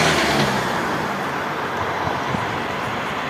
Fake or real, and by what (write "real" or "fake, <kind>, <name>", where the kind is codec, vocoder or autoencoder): real